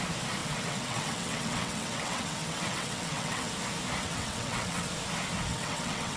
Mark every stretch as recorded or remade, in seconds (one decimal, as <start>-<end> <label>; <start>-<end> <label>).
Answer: 0.0-0.4 recorded; 0.4-3.5 remade; 3.5-4.0 recorded; 4.0-4.9 remade; 4.9-5.5 recorded; 5.5-6.2 remade